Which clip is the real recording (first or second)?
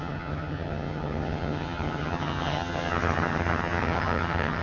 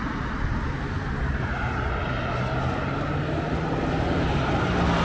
second